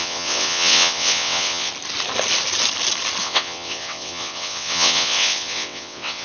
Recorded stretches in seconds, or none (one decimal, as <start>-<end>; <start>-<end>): 1.7-3.2